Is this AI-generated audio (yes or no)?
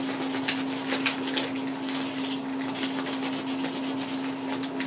no